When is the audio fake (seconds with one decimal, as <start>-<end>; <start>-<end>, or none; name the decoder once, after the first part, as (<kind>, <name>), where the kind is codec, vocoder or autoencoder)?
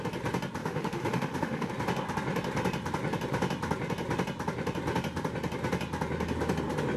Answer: 0.6-1.7 (autoencoder, DAC-VAE)